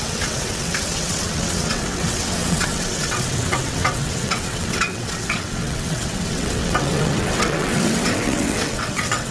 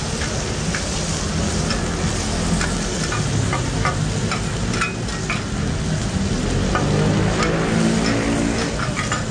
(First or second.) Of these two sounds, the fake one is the first